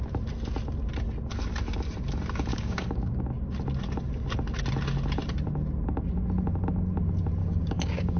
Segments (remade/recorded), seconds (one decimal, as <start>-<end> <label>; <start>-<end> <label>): 0.0-2.5 recorded; 2.5-3.2 remade; 3.2-7.4 recorded; 7.4-8.2 remade